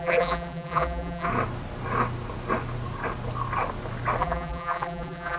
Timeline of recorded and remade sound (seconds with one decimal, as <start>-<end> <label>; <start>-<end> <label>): 0.0-1.3 remade; 1.3-4.2 recorded; 4.2-5.4 remade